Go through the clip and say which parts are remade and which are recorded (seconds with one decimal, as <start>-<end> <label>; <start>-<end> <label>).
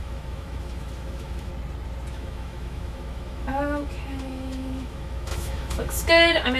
0.0-1.5 remade; 1.5-2.1 recorded; 2.1-6.6 remade